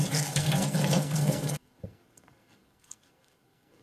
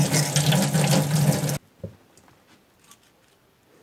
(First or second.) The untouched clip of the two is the second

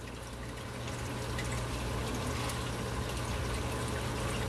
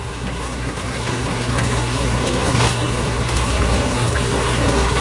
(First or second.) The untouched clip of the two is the first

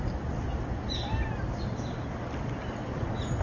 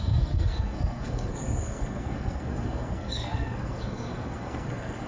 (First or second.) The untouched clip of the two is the first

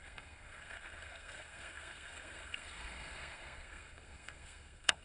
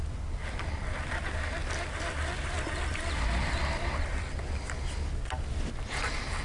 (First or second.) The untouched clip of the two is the second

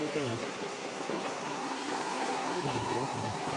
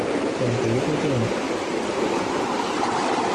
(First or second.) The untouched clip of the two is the second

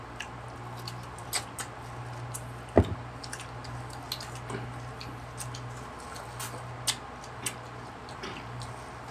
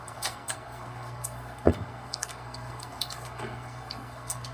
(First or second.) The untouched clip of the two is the first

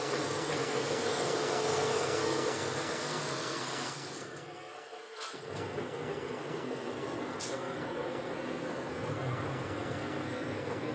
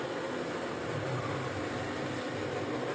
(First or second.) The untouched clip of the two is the second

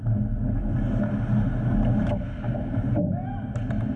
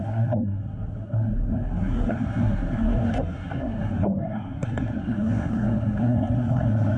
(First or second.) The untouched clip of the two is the first